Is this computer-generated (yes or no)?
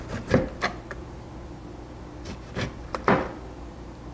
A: no